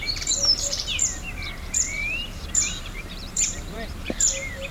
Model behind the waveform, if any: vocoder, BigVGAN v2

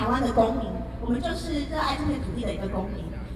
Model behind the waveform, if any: none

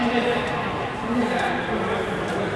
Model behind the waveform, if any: none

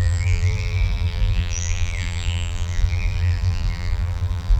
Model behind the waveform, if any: vocoder, BigVGAN v2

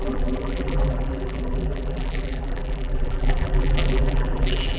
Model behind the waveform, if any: vocoder, BigVGAN v2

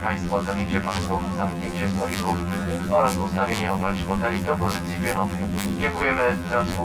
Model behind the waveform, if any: vocoder, BigVGAN v2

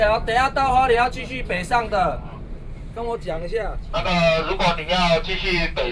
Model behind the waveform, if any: vocoder, BigVGAN v2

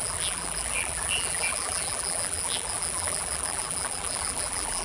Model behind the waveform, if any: vocoder, BigVGAN v2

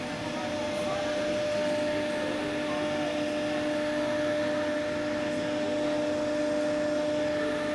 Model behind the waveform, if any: none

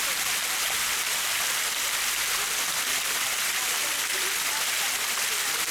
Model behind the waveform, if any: none